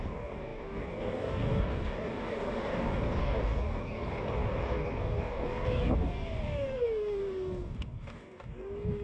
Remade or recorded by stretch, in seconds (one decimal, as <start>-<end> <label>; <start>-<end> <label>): 0.0-9.0 remade